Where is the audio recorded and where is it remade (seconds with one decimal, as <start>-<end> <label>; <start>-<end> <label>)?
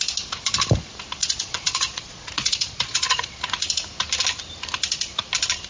0.0-1.2 recorded; 1.2-3.4 remade; 3.4-5.7 recorded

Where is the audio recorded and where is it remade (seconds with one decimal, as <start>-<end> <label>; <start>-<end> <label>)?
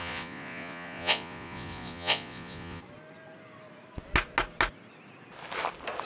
0.0-2.8 remade; 2.8-6.1 recorded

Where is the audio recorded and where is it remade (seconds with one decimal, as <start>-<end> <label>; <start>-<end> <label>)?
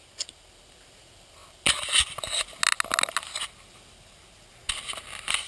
0.0-5.5 recorded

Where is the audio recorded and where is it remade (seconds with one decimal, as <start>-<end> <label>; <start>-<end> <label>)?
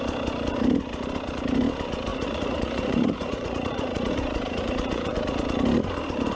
0.0-2.1 recorded; 2.1-5.1 remade; 5.1-6.4 recorded